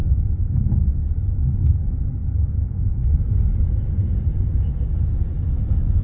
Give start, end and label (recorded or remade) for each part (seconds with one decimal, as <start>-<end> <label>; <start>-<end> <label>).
0.0-2.2 recorded; 2.2-5.4 remade; 5.4-6.0 recorded